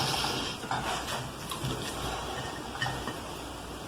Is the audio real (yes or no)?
yes